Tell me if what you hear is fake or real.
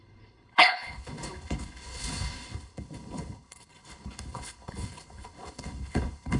fake